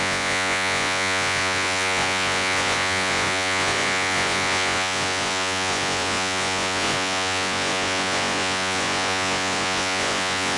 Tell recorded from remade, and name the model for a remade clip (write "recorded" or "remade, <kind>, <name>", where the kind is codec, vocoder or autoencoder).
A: remade, vocoder, Vocos